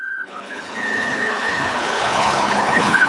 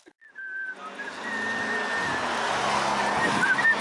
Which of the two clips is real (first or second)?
second